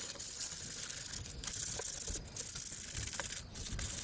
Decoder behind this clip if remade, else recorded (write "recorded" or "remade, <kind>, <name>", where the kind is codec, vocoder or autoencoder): recorded